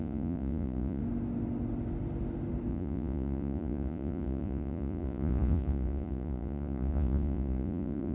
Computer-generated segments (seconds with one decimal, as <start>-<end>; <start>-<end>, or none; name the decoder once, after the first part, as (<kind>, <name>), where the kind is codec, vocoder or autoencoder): 0.0-1.0 (vocoder, Vocos); 2.7-8.1